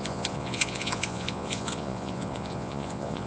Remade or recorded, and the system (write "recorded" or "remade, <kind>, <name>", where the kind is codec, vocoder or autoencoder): remade, vocoder, Vocos